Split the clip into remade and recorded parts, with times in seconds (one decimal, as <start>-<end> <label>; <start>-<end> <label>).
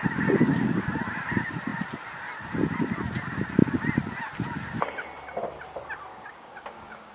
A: 0.0-6.1 recorded; 6.1-7.1 remade